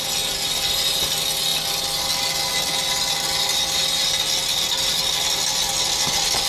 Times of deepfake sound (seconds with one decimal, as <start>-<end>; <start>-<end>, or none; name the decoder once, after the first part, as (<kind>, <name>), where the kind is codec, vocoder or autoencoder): none